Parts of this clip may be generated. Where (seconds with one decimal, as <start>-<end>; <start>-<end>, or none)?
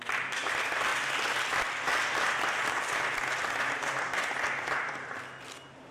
none